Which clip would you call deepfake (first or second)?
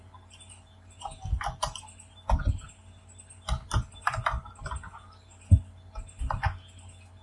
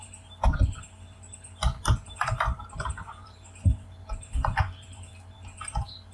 second